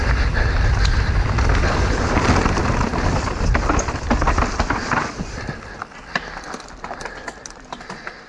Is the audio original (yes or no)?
yes